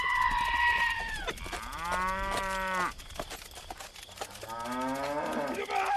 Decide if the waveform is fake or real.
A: real